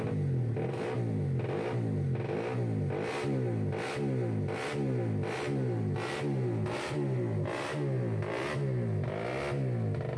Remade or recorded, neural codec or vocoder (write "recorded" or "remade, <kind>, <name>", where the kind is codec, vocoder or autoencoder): recorded